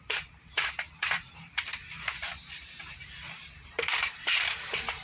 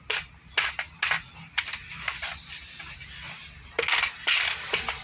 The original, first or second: second